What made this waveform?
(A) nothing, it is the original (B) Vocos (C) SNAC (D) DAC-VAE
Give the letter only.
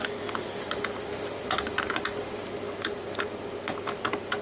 A